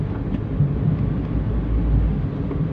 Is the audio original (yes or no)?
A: yes